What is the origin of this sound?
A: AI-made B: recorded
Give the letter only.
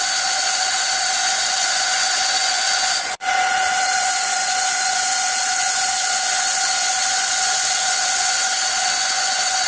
A